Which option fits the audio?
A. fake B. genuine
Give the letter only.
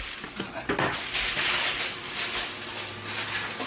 B